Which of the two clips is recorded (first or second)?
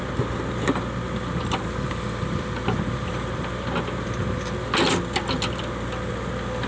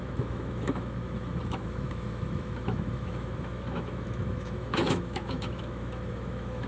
first